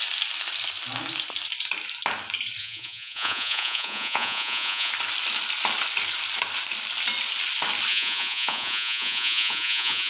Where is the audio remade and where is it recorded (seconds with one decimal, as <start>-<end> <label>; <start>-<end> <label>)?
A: 0.0-2.6 recorded; 2.6-4.9 remade; 4.9-7.9 recorded; 7.9-10.1 remade